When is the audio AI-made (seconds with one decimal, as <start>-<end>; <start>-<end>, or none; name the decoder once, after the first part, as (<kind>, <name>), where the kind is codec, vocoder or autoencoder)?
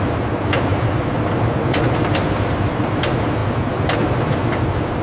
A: none